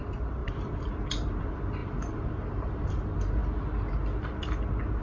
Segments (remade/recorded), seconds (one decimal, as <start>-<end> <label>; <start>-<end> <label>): 0.0-1.8 recorded; 1.8-3.0 remade; 3.0-5.0 recorded